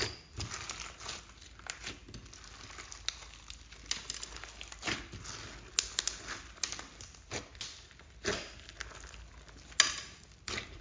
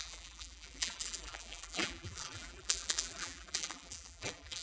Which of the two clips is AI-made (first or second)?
second